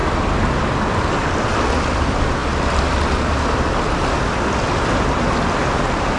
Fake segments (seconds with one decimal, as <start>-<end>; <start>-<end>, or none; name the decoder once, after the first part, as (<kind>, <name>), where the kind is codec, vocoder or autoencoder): none